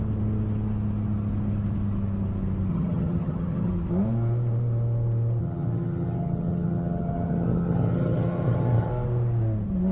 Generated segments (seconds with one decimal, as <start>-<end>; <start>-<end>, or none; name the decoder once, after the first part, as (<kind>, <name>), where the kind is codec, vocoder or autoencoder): 2.7-3.7 (vocoder, HiFi-GAN); 5.4-8.9